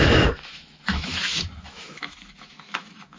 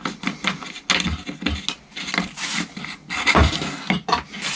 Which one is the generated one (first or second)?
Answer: first